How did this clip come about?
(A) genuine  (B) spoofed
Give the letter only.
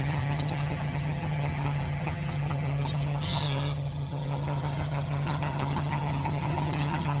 B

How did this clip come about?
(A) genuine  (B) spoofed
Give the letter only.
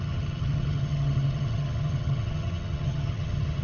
B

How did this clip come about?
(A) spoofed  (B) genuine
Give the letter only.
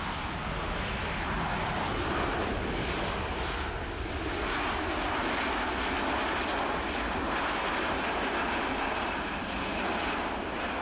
B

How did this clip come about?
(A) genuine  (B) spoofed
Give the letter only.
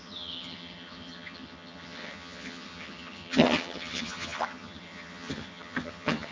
B